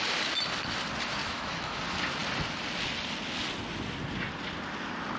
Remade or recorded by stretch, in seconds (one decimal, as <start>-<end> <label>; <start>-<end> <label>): 0.0-1.2 recorded; 1.2-1.8 remade; 1.8-5.2 recorded